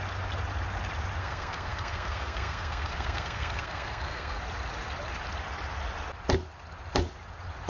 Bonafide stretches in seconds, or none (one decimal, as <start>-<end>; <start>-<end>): 0.0-1.2; 4.4-7.7